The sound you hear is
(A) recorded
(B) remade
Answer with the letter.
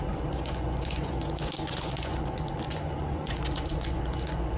B